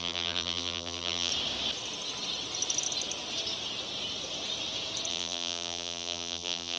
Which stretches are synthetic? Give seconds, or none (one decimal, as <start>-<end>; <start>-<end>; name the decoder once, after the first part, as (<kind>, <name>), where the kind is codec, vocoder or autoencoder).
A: 0.0-1.3 (vocoder, BigVGAN v2); 5.1-6.8